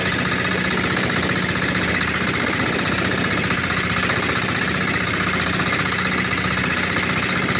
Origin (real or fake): real